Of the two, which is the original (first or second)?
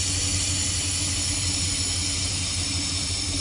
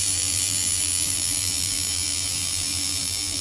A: first